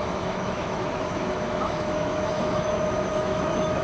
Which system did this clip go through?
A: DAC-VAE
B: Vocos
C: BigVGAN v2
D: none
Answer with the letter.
A